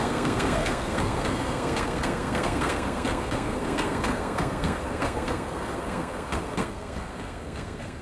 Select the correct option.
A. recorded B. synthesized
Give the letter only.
B